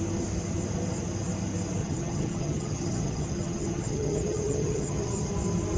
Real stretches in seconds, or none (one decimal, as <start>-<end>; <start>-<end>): 0.0-1.8; 5.3-5.8